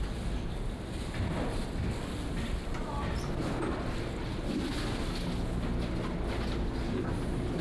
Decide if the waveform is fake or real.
real